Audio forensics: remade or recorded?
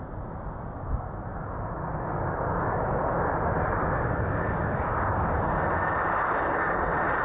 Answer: recorded